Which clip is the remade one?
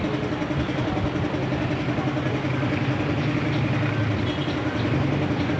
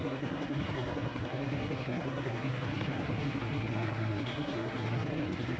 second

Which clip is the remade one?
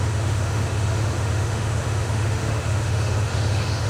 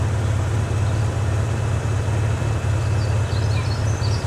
first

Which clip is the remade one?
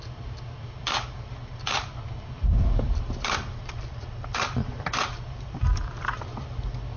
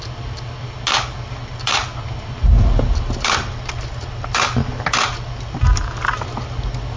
first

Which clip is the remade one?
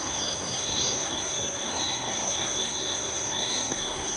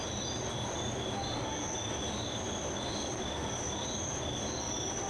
first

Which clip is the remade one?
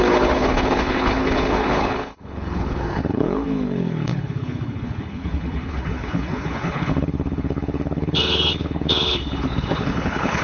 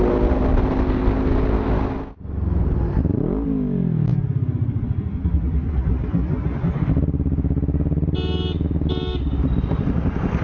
first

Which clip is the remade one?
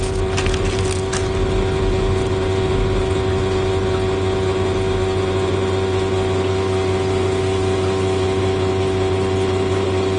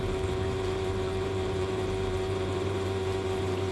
second